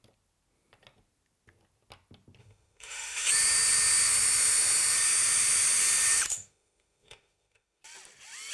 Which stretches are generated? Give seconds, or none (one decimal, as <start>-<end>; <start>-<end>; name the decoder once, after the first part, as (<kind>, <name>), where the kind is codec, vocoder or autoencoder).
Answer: 2.4-3.3 (autoencoder, DAC-VAE); 6.3-7.8